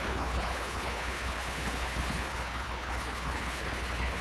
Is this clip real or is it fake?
fake